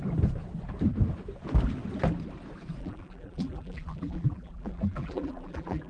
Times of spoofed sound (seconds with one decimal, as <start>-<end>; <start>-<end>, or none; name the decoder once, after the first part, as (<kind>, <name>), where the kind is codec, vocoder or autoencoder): 2.8-5.9 (vocoder, BigVGAN v2)